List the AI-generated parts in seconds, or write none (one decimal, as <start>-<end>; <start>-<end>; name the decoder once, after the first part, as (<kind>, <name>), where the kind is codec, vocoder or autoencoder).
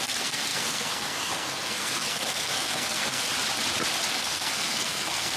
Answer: 0.0-3.3 (codec, SNAC); 4.1-5.4